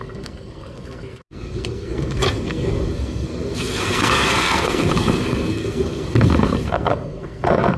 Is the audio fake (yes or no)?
yes